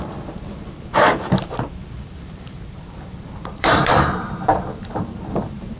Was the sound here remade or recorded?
remade